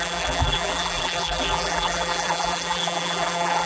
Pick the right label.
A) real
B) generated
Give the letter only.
B